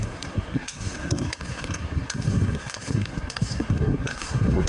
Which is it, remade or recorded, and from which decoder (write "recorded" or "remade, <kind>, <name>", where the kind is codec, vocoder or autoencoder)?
remade, codec, SNAC